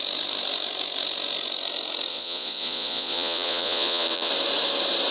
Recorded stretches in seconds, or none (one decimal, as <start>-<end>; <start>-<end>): 0.0-2.1; 4.3-5.1